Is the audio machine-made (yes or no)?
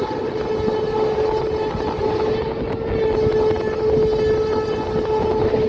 no